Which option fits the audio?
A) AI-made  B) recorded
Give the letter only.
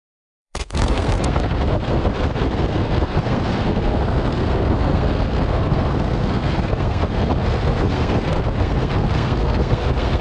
A